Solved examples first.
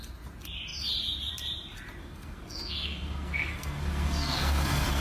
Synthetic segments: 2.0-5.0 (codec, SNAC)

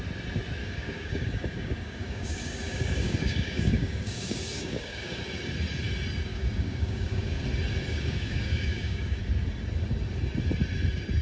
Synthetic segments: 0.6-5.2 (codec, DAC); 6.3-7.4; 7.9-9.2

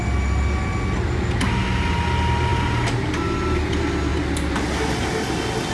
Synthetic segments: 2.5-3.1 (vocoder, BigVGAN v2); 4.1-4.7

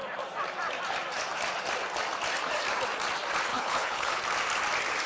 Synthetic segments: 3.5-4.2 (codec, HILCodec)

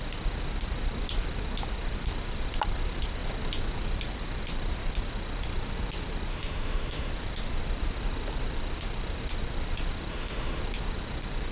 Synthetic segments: 6.3-7.1 (autoencoder, DAC-VAE); 10.1-10.6

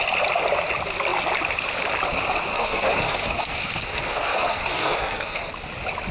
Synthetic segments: 2.5-5.5 (codec, SNAC)

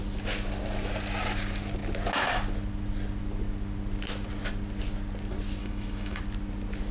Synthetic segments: 5.6-6.2 (autoencoder, DAC-VAE)

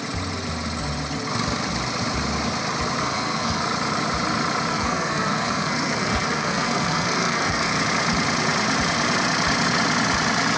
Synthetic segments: 3.0-3.6 (codec, SNAC); 4.7-7.8